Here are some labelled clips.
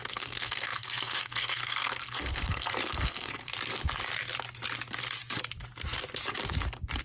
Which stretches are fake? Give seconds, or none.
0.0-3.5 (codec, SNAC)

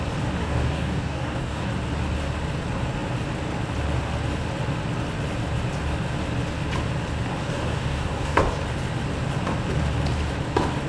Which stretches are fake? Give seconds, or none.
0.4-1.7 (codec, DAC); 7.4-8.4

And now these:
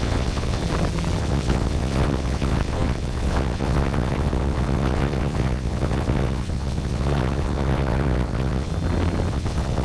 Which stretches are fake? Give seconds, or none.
0.0-0.6 (vocoder, WaveNeXt); 1.2-8.7; 9.3-9.8

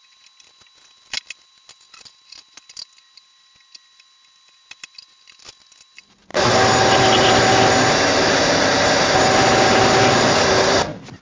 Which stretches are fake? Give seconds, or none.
none